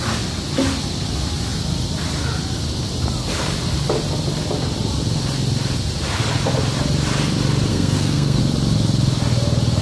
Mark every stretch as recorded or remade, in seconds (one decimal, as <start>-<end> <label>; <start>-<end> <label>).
0.0-7.7 recorded; 7.7-8.4 remade; 8.4-9.8 recorded